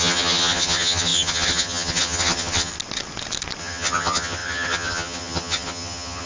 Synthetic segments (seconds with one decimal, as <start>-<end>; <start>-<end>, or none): 0.0-2.7; 3.6-6.3